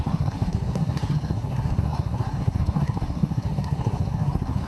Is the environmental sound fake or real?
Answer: fake